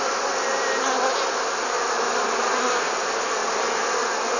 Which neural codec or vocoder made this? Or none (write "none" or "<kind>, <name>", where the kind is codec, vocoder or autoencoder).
none